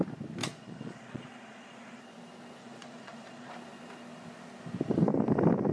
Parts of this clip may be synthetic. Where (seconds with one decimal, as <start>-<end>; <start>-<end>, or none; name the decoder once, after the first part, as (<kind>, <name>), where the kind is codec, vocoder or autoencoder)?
0.4-2.0 (vocoder, Vocos); 2.6-3.5